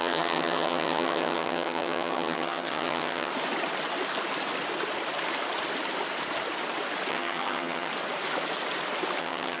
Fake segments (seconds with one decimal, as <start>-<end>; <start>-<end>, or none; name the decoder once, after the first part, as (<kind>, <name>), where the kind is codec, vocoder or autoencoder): 0.0-3.3 (vocoder, HiFi-GAN); 7.1-7.9; 9.2-9.6